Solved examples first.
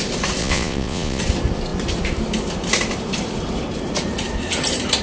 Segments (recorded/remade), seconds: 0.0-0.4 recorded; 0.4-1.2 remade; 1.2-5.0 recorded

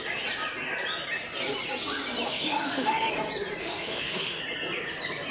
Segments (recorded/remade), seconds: 0.0-2.3 recorded; 2.3-3.1 remade; 3.1-3.6 recorded; 3.6-4.4 remade; 4.4-5.3 recorded

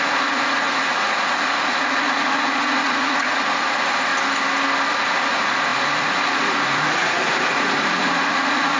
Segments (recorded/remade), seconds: 0.0-4.1 remade; 4.1-4.9 recorded; 4.9-8.8 remade

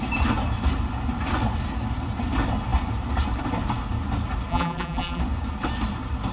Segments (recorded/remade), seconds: 0.0-4.5 recorded; 4.5-5.2 remade; 5.2-6.3 recorded

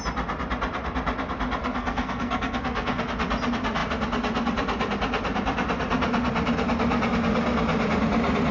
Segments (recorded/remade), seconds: 0.0-1.6 recorded; 1.6-3.0 remade; 3.0-8.5 recorded

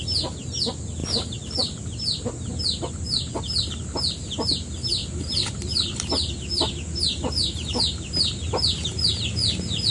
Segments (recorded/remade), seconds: 0.0-5.0 recorded; 5.0-6.3 remade; 6.3-9.9 recorded

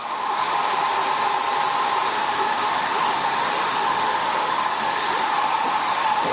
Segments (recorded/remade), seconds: 0.0-0.5 remade; 0.5-2.1 recorded; 2.1-5.3 remade; 5.3-5.8 recorded; 5.8-6.3 remade